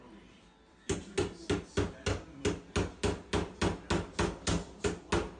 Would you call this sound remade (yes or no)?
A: no